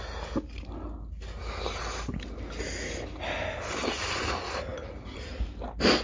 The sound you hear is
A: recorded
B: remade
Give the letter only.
A